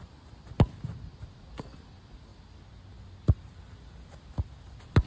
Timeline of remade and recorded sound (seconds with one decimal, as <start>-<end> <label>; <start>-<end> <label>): 0.0-5.1 recorded